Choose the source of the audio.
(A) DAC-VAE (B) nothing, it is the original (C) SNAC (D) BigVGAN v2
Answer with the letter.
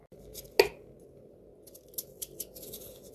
B